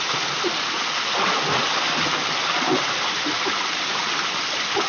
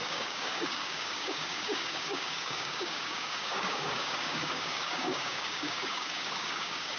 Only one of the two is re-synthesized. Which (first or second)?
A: second